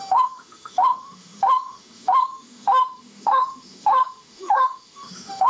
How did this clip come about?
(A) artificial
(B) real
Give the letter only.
A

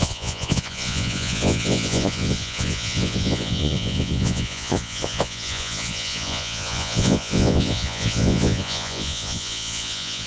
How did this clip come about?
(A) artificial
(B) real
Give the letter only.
A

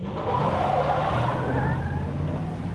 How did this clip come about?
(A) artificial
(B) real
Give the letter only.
B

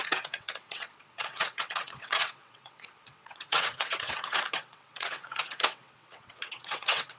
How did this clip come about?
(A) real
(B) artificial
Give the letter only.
B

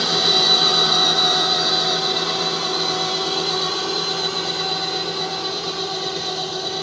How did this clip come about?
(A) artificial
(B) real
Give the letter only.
B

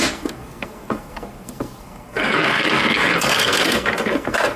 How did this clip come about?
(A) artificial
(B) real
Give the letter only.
A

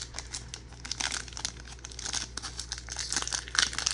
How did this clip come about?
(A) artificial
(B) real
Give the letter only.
B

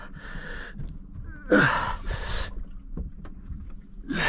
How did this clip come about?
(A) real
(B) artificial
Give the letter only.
A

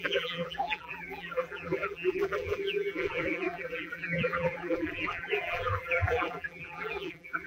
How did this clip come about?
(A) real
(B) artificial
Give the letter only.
B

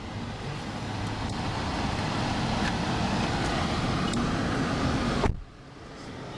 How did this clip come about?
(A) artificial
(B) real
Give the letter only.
B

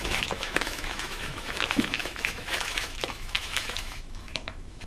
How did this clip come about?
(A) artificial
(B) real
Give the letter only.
A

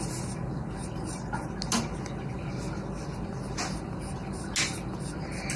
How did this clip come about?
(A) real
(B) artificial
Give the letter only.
A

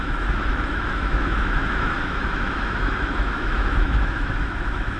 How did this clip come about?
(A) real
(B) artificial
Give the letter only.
B